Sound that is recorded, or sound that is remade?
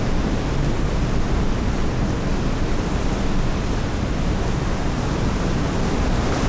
recorded